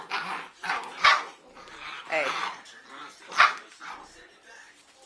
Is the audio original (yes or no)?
yes